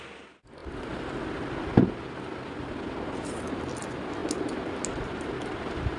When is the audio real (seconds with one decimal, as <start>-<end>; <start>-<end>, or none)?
0.0-6.0

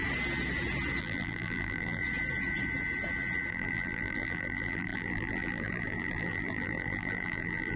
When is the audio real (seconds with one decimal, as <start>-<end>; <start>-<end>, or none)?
0.0-1.0; 2.0-3.5

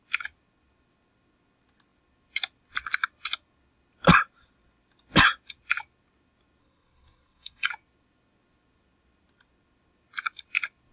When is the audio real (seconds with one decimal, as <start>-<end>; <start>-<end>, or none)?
0.0-6.6; 7.7-10.9

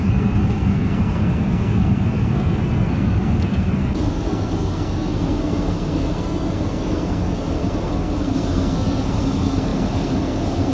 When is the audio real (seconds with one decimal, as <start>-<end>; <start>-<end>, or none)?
none